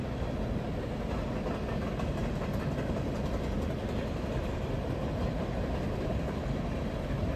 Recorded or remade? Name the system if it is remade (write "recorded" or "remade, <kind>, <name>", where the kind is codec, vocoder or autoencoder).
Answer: recorded